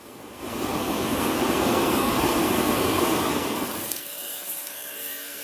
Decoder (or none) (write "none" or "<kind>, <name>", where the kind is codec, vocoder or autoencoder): codec, SNAC